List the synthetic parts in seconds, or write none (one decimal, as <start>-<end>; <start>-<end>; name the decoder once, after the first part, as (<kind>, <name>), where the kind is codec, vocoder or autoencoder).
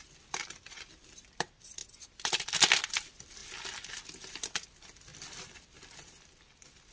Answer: 0.0-1.8 (vocoder, BigVGAN v2); 2.8-3.4; 4.0-6.9